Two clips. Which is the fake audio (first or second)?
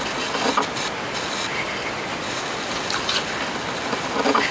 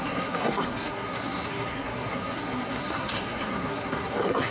second